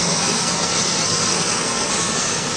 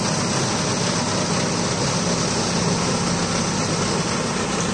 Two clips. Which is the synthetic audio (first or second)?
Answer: first